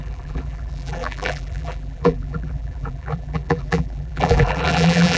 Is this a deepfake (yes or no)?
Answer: yes